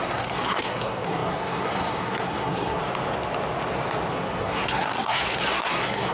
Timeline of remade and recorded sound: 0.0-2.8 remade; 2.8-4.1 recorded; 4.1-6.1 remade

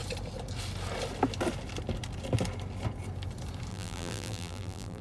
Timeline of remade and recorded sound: 0.0-3.7 recorded; 3.7-5.0 remade

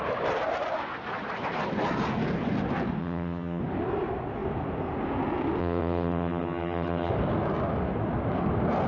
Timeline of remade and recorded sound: 0.0-3.0 recorded; 3.0-3.6 remade; 3.6-5.6 recorded; 5.6-7.1 remade; 7.1-8.9 recorded

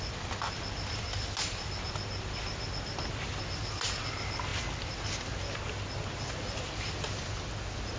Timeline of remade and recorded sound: 0.0-8.0 recorded

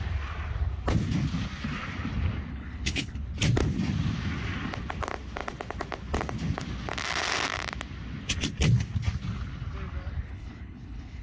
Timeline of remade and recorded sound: 0.0-2.5 recorded; 2.5-3.2 remade; 3.2-10.3 recorded; 10.3-11.2 remade